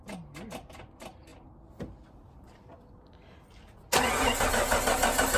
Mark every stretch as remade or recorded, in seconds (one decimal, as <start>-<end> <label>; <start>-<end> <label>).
0.0-5.4 recorded